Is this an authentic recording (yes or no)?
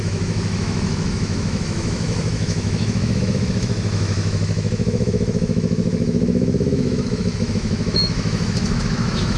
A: no